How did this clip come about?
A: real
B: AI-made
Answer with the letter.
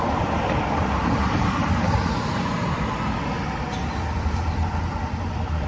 B